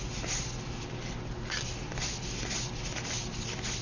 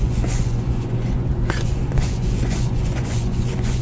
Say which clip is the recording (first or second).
first